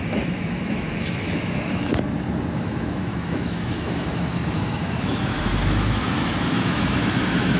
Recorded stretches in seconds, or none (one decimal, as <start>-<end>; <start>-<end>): 1.9-2.6

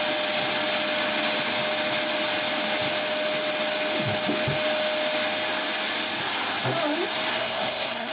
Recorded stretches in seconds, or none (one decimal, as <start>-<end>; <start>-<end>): 0.0-7.3

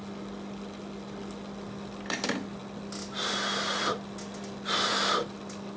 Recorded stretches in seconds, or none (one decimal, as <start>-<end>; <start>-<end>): 0.0-5.8